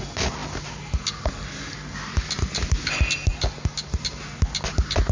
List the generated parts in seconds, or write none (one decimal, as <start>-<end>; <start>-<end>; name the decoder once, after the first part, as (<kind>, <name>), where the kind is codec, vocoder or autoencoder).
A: none